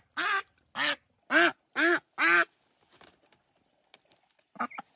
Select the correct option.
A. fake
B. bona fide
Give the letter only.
B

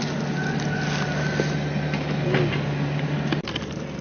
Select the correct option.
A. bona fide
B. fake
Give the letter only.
A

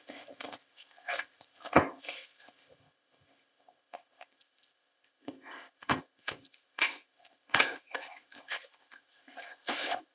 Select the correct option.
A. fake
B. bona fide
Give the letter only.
A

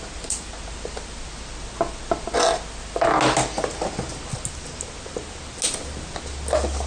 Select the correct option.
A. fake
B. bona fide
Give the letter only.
B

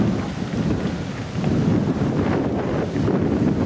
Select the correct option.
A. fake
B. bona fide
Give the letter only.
B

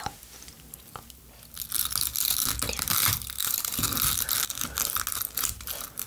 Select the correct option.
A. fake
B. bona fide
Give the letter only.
B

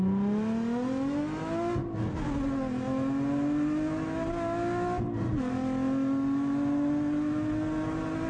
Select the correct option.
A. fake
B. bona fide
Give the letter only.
B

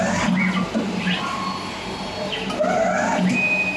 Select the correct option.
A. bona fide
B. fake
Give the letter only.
A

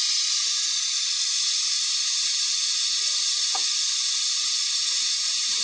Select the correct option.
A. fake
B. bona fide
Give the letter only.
B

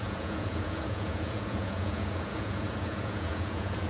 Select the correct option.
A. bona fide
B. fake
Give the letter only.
B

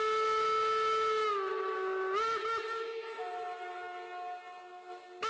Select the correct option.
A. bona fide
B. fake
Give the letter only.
A